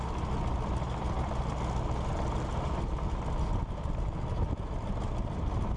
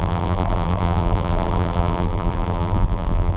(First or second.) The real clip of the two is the first